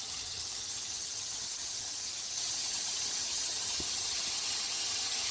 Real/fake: fake